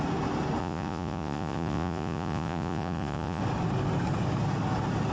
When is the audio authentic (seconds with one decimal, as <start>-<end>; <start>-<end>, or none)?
0.0-0.6; 3.4-5.1